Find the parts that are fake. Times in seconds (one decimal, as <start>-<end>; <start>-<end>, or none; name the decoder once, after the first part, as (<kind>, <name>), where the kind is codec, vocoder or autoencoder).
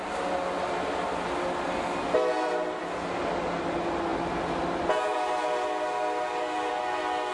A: none